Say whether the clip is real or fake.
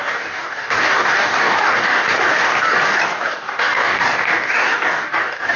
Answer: fake